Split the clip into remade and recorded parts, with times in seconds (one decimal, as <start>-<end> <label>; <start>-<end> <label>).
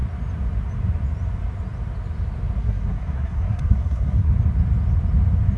0.0-2.6 recorded; 2.6-4.3 remade; 4.3-5.6 recorded